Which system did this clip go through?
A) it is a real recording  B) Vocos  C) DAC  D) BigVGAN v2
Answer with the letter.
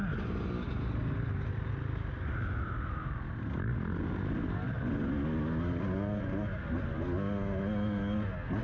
A